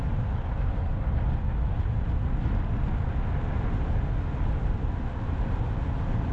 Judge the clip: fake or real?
real